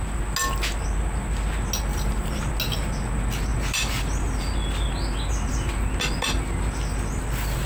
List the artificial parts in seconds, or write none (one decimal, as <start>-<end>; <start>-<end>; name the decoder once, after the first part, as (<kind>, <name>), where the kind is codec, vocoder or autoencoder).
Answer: 1.9-2.5 (vocoder, BigVGAN v2)